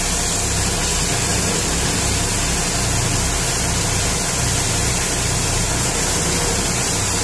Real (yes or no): yes